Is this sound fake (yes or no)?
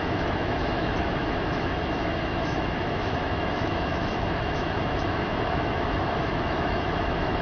yes